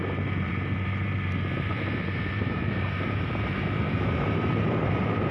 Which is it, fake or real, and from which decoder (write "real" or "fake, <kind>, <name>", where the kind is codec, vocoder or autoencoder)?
fake, vocoder, BigVGAN v2